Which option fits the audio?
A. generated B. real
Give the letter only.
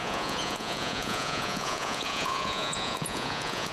A